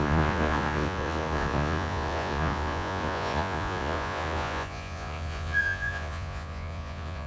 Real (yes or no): no